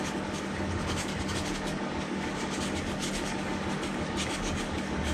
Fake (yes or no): yes